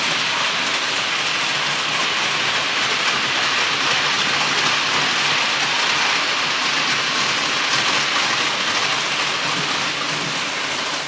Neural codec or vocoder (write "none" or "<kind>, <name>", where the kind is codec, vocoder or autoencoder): none